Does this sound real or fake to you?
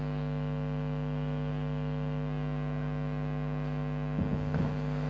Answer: real